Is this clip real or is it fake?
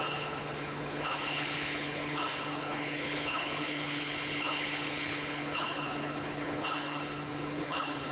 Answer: fake